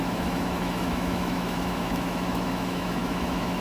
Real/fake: fake